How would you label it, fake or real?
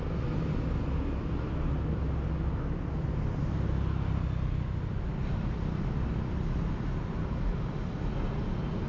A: real